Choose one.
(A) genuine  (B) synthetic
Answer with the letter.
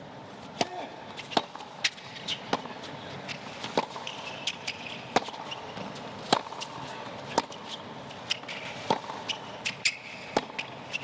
A